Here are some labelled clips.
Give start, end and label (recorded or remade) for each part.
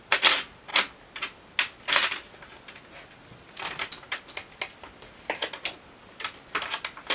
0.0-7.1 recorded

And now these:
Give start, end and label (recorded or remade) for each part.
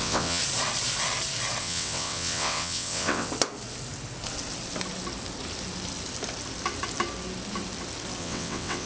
0.0-0.4 remade; 0.4-1.6 recorded; 1.6-3.3 remade; 3.3-8.2 recorded; 8.2-8.9 remade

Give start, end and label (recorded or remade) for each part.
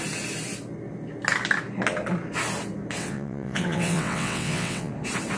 0.0-3.0 recorded; 3.0-4.9 remade; 4.9-5.4 recorded